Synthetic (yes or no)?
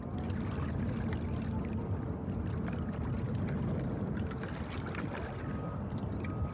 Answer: no